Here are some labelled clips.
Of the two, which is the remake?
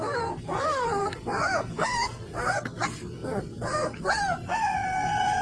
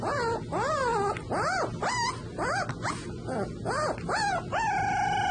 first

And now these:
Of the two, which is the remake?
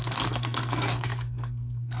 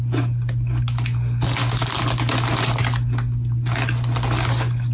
first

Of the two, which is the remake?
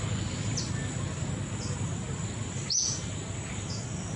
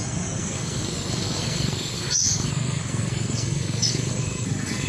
second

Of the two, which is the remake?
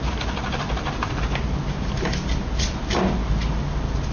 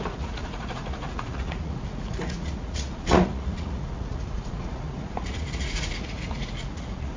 second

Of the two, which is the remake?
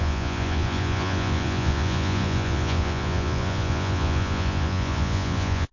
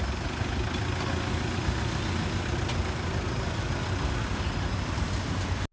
first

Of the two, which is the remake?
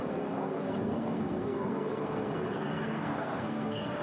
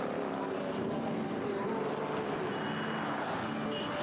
first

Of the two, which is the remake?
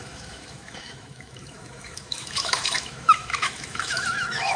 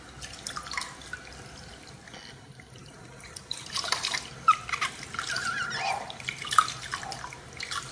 first